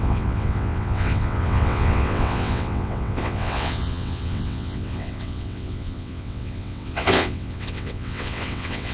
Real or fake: fake